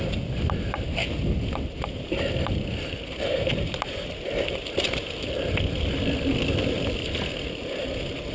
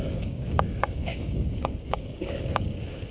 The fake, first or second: second